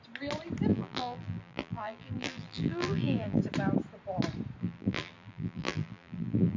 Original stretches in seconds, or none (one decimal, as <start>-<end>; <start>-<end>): 0.0-0.7; 3.4-4.6